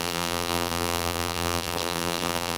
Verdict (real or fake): fake